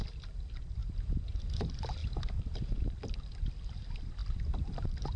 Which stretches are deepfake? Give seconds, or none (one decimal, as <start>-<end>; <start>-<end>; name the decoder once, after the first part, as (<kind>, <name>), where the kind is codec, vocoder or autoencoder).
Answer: 2.0-3.2 (vocoder, BigVGAN v2)